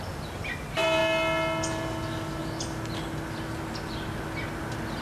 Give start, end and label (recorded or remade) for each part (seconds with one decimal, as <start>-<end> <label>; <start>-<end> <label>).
0.0-1.0 remade; 1.0-1.6 recorded; 1.6-2.4 remade; 2.4-4.5 recorded; 4.5-5.0 remade